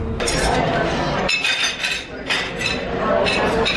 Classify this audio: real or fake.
real